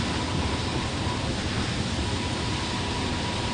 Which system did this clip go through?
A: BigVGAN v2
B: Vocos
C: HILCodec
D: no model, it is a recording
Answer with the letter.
D